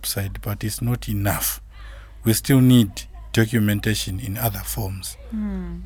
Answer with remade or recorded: recorded